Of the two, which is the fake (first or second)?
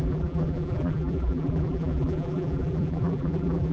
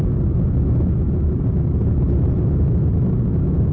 first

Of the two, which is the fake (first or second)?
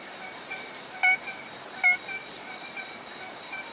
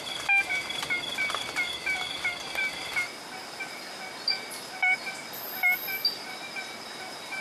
first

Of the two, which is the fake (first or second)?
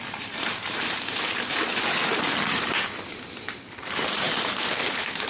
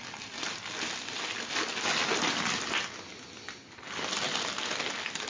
first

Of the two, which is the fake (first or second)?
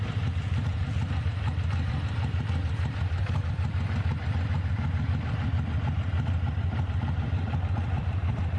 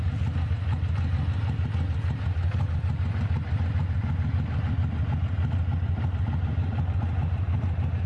first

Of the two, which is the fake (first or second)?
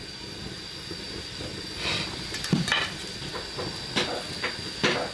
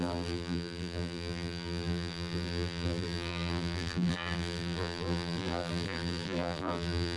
second